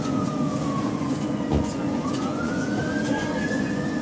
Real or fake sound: fake